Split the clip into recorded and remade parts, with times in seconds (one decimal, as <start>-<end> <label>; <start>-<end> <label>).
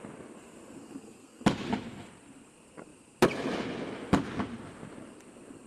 0.0-0.8 recorded; 0.8-1.4 remade; 1.4-5.7 recorded